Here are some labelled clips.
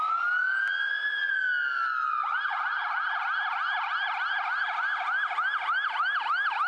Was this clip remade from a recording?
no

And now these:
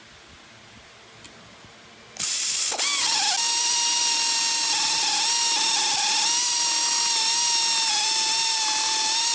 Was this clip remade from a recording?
no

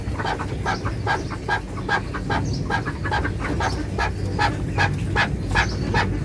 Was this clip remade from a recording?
no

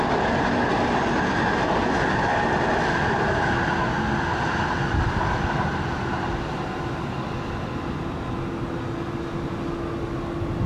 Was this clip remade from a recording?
no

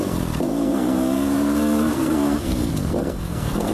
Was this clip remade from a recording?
yes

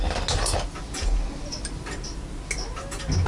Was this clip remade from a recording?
no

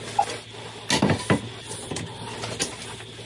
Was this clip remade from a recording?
no